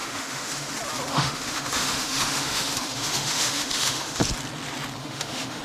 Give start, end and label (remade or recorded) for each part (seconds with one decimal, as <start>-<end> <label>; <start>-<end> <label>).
0.0-0.7 remade; 0.7-1.1 recorded; 1.1-4.2 remade; 4.2-5.0 recorded; 5.0-5.6 remade